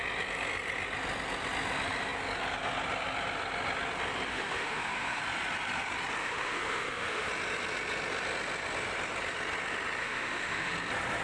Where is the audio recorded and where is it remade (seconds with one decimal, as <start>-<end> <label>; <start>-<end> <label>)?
0.0-4.3 recorded; 4.3-5.2 remade; 5.2-6.2 recorded; 6.2-7.3 remade; 7.3-10.0 recorded; 10.0-10.7 remade; 10.7-11.2 recorded

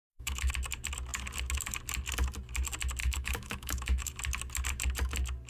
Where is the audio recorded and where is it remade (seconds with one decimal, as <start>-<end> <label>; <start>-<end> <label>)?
0.0-0.5 remade; 0.5-3.0 recorded; 3.0-4.1 remade; 4.1-5.5 recorded